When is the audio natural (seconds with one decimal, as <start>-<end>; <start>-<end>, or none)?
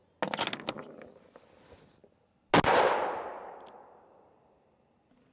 0.0-5.3